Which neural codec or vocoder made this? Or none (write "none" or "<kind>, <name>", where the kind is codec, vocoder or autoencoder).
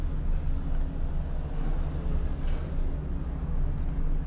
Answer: none